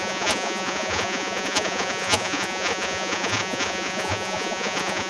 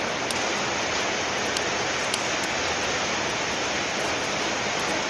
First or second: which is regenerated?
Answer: first